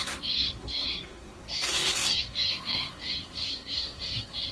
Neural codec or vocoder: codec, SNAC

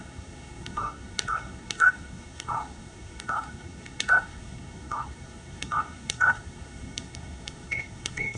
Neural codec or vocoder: codec, SNAC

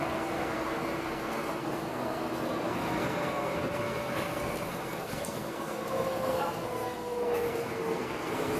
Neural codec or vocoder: codec, SNAC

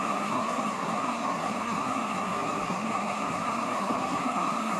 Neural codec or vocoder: codec, SNAC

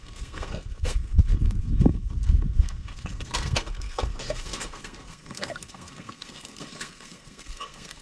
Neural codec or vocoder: codec, SNAC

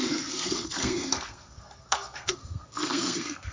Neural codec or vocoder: codec, SNAC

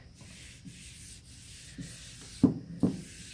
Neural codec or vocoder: none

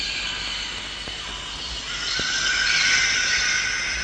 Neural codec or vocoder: none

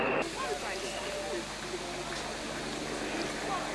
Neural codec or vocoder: none